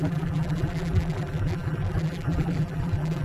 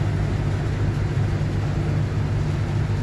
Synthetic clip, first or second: first